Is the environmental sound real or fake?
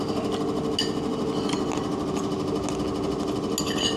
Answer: real